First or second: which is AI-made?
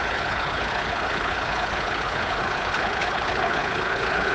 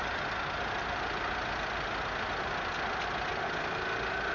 first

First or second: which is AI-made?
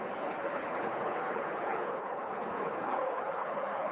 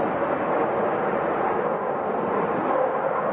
first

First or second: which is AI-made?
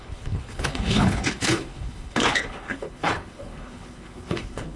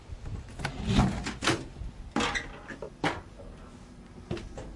first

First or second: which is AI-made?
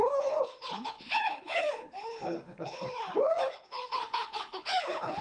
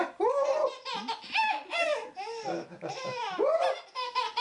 first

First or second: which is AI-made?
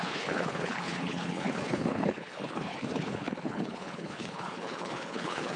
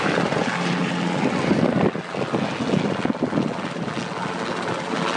first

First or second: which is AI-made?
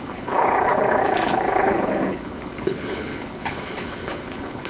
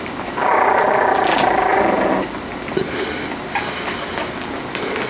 first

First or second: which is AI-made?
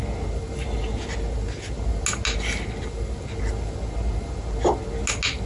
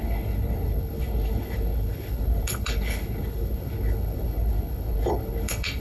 second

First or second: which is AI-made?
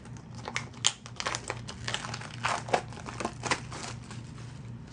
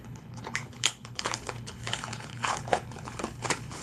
second